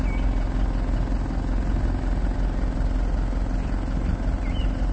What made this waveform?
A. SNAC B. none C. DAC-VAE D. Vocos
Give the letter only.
B